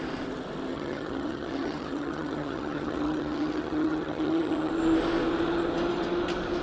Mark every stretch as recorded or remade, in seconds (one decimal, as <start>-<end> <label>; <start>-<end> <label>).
0.0-0.7 recorded; 0.7-4.7 remade; 4.7-6.6 recorded